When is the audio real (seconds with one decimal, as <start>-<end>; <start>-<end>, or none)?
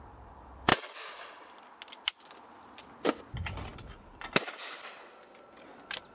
0.0-6.1